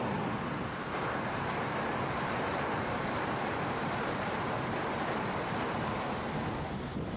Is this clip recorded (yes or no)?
no